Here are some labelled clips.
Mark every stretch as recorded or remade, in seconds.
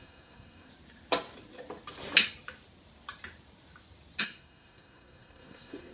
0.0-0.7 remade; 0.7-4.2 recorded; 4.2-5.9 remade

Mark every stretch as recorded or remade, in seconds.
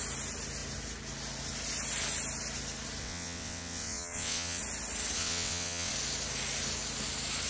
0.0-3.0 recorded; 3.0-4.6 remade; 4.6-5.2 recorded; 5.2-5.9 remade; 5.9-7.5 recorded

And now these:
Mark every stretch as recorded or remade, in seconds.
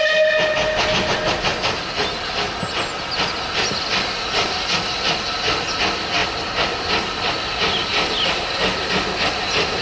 0.0-9.8 recorded